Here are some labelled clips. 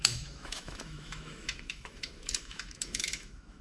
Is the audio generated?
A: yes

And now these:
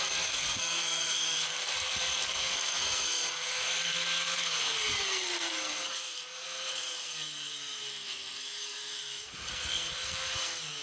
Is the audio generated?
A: yes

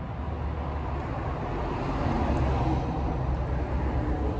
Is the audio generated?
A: no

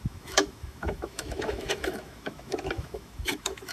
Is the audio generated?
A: yes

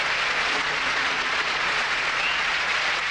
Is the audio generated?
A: yes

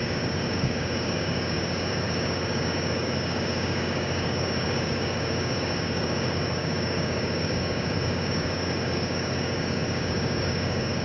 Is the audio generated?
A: yes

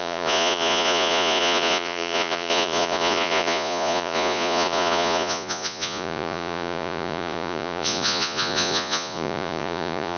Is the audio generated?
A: yes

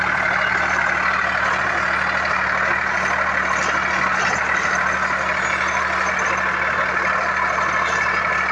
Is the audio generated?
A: no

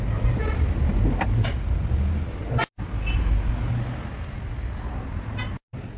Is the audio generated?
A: no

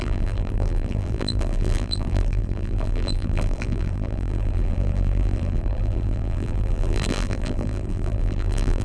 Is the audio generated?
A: yes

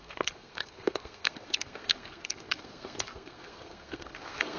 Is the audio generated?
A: yes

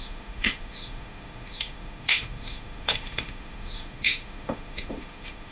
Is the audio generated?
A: yes